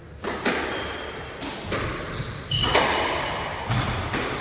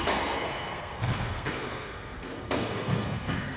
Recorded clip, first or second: first